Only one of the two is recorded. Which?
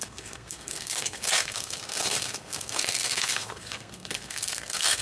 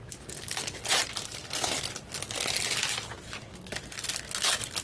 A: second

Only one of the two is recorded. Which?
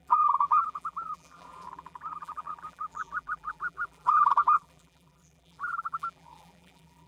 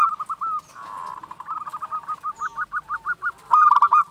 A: second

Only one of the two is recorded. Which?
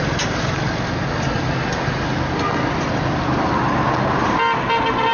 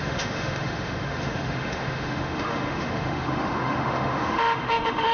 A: first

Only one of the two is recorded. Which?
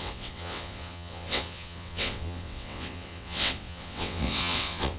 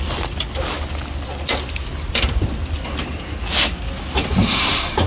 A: second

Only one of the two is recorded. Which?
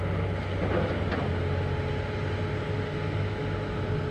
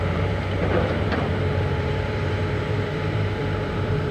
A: first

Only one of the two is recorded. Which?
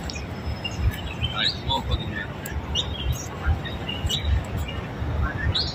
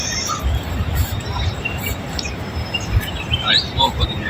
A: first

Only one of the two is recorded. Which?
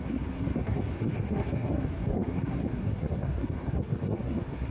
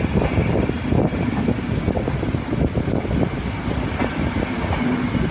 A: second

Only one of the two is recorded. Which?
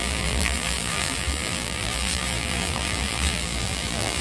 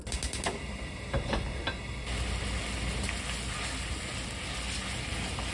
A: second